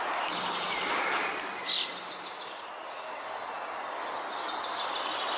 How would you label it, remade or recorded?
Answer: recorded